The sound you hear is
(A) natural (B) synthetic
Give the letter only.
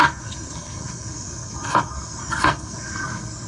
B